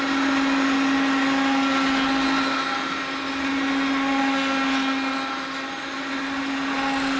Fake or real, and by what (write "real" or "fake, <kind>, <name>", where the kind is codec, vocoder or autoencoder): real